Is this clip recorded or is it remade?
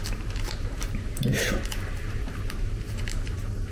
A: remade